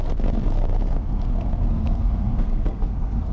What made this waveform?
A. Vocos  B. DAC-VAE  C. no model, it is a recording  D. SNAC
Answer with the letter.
D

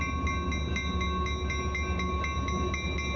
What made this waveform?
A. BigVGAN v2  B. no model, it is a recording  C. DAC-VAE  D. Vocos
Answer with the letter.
B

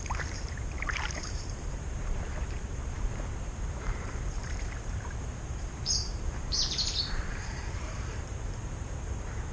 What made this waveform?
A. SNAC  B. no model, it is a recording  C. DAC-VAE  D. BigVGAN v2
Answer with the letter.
D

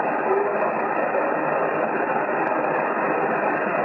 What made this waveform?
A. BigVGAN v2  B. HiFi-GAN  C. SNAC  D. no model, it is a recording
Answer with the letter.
D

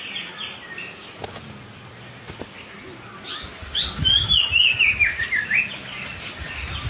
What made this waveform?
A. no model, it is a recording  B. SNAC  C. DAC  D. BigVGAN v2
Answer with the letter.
A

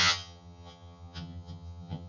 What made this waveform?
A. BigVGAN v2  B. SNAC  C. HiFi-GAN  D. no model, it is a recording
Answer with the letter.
C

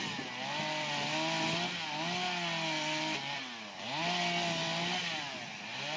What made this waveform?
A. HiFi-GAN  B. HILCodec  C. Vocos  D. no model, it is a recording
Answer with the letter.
D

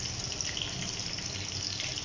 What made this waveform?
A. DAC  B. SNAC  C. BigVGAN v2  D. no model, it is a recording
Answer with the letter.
D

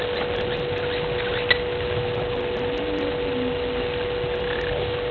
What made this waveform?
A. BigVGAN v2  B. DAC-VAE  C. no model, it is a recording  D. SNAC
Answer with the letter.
C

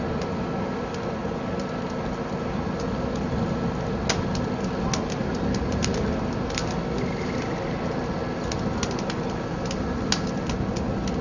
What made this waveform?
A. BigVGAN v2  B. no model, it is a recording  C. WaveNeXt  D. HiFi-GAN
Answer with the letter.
B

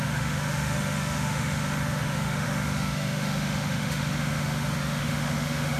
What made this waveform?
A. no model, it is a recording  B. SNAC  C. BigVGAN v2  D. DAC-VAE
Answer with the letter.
D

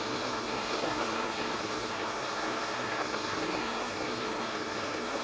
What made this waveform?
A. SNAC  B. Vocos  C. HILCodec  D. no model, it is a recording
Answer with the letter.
A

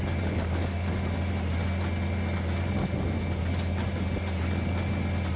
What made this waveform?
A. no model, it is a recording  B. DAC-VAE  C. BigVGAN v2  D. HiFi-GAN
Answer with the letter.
A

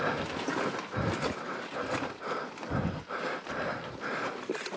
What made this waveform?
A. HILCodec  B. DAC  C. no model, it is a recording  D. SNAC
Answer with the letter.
C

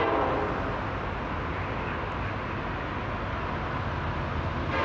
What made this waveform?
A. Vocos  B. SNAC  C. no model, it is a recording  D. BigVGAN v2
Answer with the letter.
C